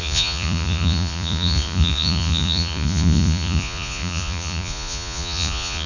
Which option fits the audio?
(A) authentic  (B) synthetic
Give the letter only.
B